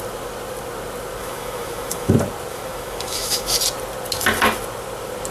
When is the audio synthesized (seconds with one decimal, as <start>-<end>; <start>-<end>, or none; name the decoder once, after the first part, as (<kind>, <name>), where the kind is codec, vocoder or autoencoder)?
1.2-2.1 (autoencoder, DAC-VAE); 2.5-3.6